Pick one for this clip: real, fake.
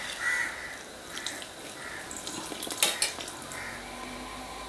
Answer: real